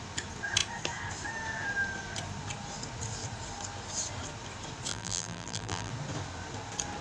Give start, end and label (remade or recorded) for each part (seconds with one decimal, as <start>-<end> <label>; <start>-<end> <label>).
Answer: 0.0-4.9 recorded; 4.9-5.9 remade; 5.9-7.0 recorded